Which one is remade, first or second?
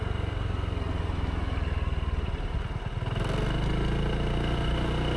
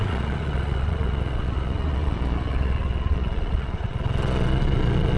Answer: second